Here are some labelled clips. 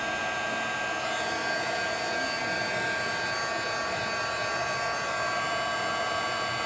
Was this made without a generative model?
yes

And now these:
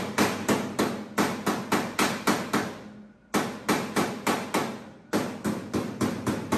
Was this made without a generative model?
yes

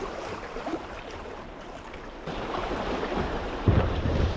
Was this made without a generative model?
no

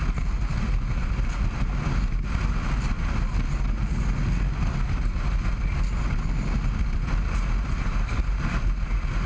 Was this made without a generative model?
yes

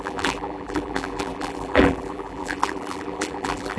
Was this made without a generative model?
no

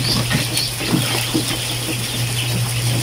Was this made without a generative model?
yes